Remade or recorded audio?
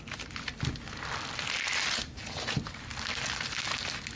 recorded